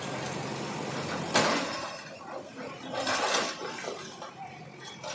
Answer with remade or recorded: recorded